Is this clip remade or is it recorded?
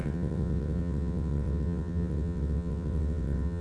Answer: remade